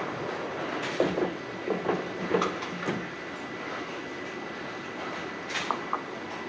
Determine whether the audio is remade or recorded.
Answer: recorded